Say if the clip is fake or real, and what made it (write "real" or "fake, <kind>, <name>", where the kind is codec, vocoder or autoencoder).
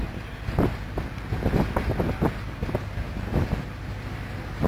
real